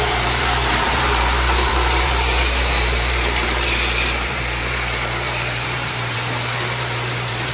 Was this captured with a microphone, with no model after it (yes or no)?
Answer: no